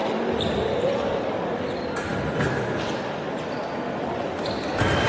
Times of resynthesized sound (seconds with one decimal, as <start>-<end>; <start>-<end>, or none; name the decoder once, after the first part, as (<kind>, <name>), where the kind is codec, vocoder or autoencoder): none